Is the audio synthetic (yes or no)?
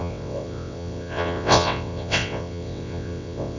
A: yes